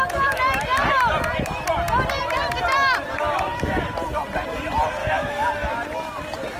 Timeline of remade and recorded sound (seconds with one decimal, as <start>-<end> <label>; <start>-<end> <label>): 0.0-5.0 recorded; 5.0-5.5 remade; 5.5-6.6 recorded